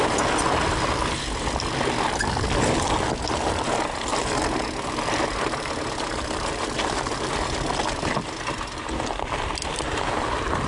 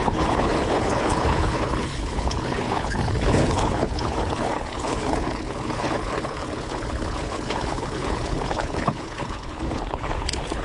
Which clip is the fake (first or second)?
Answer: second